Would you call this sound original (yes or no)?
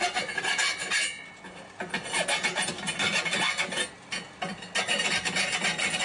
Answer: yes